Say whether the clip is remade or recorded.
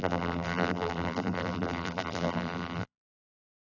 remade